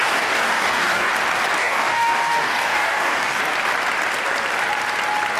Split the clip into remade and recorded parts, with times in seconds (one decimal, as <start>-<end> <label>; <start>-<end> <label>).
0.0-1.1 remade; 1.1-1.6 recorded; 1.6-3.4 remade; 3.4-5.4 recorded